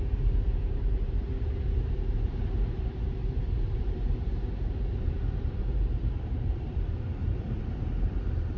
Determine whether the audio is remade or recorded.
remade